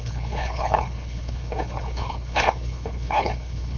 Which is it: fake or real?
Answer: fake